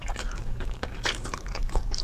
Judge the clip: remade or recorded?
remade